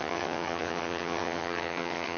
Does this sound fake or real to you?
fake